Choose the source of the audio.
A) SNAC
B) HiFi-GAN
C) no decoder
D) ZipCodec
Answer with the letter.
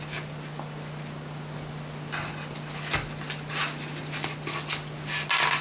C